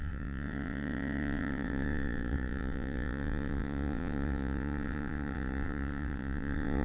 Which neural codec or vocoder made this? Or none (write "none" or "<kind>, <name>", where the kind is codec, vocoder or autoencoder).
vocoder, WaveNeXt